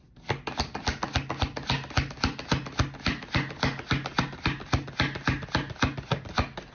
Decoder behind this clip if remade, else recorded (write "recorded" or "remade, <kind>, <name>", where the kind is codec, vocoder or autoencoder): recorded